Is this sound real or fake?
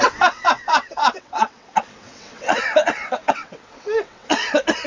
fake